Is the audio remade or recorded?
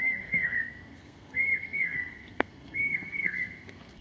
remade